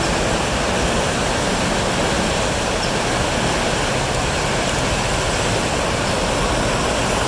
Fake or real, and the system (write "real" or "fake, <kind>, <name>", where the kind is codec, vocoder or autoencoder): real